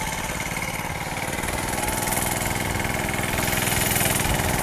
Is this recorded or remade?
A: recorded